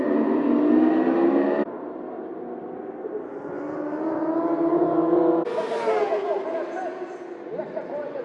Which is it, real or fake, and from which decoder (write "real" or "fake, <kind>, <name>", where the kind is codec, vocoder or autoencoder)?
real